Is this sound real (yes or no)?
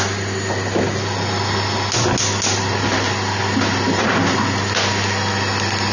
yes